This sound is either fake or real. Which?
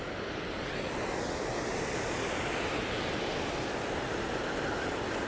real